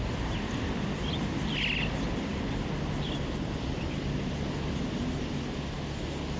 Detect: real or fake real